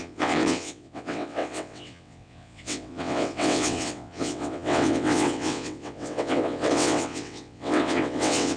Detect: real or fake fake